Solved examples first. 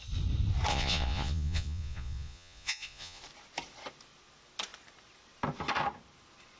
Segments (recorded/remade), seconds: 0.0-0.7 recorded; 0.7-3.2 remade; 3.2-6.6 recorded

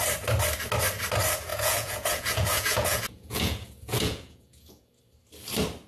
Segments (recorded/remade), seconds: 0.0-1.5 recorded; 1.5-5.0 remade; 5.0-5.9 recorded

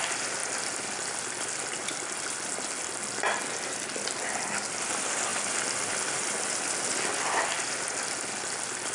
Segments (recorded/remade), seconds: 0.0-8.9 recorded